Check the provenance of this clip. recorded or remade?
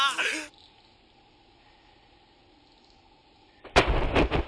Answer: recorded